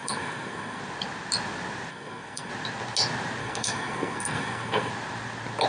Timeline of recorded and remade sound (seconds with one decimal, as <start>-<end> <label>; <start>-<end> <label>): 0.0-0.8 remade; 0.8-1.9 recorded; 1.9-2.5 remade; 2.5-3.4 recorded; 3.4-4.9 remade; 4.9-5.7 recorded